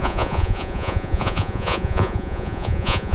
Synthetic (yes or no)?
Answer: yes